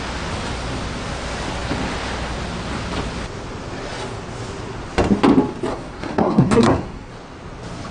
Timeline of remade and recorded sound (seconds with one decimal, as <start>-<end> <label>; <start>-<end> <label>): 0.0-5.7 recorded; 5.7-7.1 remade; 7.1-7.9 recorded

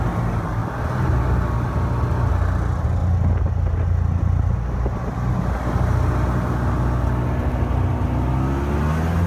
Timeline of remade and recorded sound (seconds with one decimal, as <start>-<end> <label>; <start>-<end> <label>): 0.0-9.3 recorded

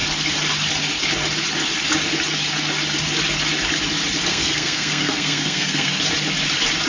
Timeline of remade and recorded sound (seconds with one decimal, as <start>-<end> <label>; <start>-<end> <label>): 0.0-4.3 recorded; 4.3-6.0 remade; 6.0-6.9 recorded

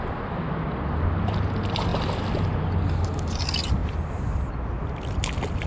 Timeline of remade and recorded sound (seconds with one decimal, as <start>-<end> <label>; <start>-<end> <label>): 0.0-5.7 recorded

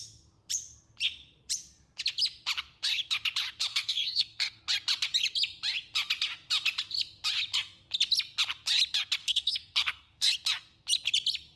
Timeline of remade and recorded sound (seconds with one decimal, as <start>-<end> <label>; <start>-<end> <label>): 0.0-3.7 recorded; 3.7-4.6 remade; 4.6-9.2 recorded; 9.2-10.3 remade; 10.3-11.6 recorded

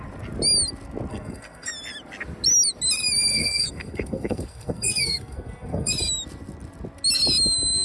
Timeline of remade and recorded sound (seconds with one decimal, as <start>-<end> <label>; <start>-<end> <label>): 0.0-1.1 recorded; 1.1-1.7 remade; 1.7-3.3 recorded; 3.3-5.9 remade; 5.9-7.8 recorded